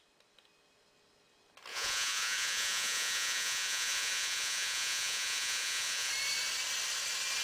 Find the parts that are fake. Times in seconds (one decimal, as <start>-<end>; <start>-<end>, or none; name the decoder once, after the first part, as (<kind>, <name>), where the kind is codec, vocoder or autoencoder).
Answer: 1.7-6.1 (vocoder, Vocos)